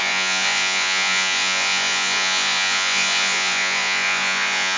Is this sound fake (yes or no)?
yes